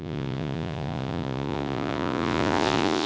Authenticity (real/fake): fake